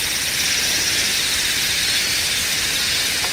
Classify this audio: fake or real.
real